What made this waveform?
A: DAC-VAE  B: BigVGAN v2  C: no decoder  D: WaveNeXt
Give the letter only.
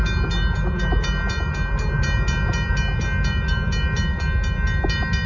C